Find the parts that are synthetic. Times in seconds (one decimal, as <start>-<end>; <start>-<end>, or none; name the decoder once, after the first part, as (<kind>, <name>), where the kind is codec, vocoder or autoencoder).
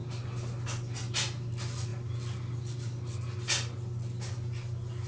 none